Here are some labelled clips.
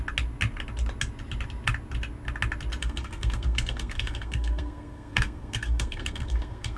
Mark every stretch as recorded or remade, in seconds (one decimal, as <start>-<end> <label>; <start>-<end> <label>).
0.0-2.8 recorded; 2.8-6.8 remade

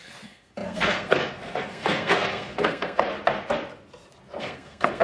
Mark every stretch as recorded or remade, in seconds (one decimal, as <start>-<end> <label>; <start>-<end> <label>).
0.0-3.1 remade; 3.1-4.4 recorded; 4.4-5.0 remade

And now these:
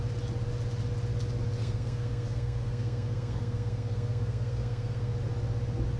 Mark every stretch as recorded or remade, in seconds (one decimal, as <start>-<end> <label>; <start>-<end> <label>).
0.0-1.6 recorded; 1.6-5.2 remade; 5.2-6.0 recorded

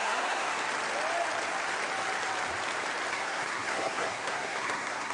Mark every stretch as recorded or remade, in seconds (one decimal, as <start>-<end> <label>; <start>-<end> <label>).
0.0-0.5 remade; 0.5-3.1 recorded; 3.1-5.1 remade

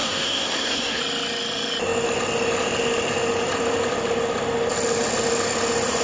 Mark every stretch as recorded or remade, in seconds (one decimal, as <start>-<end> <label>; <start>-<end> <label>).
0.0-1.0 remade; 1.0-6.0 recorded